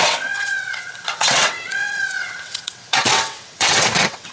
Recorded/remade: remade